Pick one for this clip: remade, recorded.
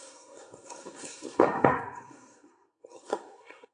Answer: remade